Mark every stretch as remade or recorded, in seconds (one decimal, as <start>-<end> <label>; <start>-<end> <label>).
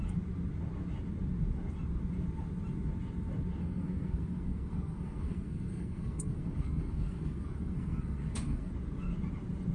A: 0.0-3.6 recorded; 3.6-8.7 remade; 8.7-9.7 recorded